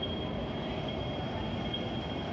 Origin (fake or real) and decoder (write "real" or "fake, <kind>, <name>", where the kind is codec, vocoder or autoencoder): real